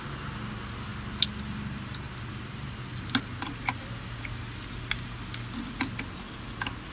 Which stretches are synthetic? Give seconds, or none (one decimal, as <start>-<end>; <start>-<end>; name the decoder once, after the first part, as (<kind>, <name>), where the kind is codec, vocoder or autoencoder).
none